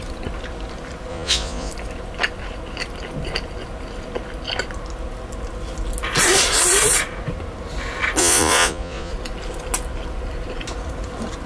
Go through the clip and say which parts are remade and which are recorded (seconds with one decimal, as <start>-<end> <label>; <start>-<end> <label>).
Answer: 0.0-1.1 recorded; 1.1-1.7 remade; 1.7-8.2 recorded; 8.2-9.1 remade; 9.1-11.5 recorded